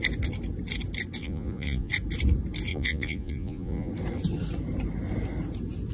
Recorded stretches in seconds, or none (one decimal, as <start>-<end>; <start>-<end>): 0.0-1.2; 1.9-2.7; 3.9-5.9